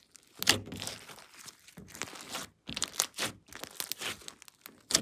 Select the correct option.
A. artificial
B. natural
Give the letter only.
B